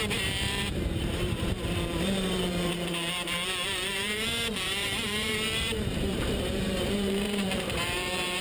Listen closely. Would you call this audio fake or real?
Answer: fake